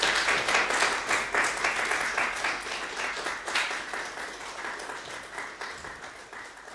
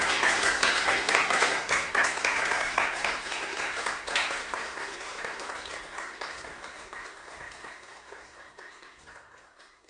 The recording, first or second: first